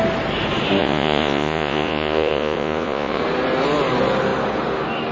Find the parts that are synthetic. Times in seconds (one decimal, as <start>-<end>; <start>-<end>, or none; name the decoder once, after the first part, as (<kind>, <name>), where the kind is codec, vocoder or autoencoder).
0.8-3.2 (vocoder, Vocos)